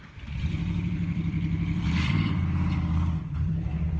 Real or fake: fake